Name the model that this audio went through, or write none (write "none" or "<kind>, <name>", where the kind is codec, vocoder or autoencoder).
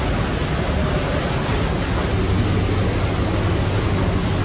none